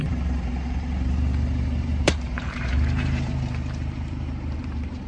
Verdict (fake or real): fake